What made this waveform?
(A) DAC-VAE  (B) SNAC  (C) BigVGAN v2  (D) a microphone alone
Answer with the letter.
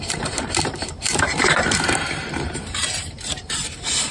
C